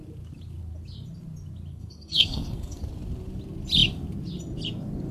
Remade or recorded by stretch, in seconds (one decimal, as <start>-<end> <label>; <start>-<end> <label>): 0.0-1.7 recorded; 1.7-2.8 remade; 2.8-5.1 recorded